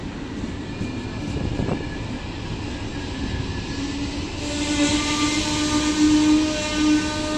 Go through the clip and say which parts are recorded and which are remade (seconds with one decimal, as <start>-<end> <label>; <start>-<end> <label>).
0.0-7.4 recorded